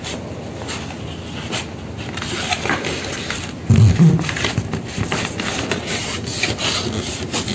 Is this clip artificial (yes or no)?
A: no